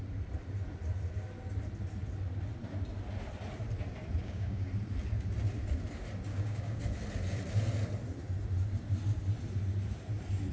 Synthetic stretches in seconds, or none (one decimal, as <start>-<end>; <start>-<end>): 4.2-4.7; 6.3-6.8